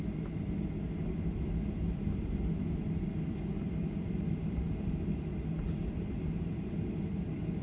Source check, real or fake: real